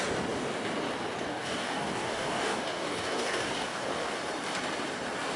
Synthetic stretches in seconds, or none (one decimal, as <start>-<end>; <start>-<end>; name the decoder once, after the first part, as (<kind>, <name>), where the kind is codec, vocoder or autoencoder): 1.3-4.2 (codec, DAC)